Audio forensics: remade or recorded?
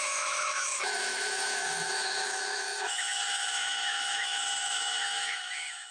remade